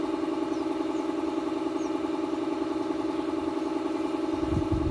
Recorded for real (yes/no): yes